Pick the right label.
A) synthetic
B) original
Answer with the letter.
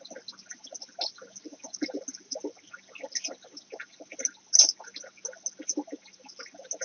B